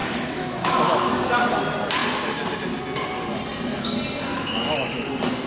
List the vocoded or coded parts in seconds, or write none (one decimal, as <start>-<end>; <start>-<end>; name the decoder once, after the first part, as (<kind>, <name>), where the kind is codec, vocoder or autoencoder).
0.0-1.1 (autoencoder, DAC-VAE); 4.3-5.1